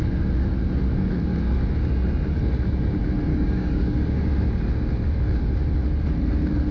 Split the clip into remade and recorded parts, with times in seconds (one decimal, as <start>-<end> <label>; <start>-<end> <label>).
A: 0.0-3.3 recorded; 3.3-4.2 remade; 4.2-6.7 recorded